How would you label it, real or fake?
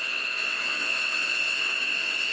fake